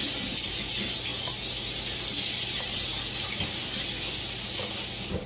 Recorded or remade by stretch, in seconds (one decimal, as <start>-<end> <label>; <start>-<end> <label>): 0.0-5.3 recorded